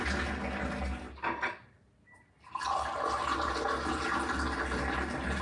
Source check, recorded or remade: recorded